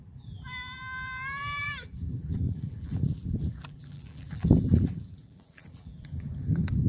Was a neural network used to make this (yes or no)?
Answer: yes